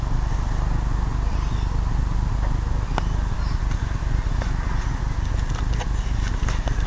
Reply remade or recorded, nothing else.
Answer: recorded